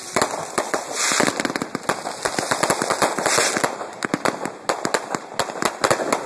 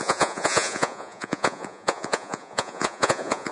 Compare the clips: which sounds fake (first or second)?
second